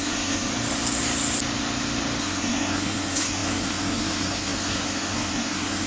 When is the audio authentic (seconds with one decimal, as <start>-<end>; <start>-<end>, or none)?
0.5-2.2